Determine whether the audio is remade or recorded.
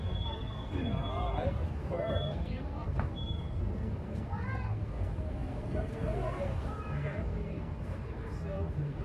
remade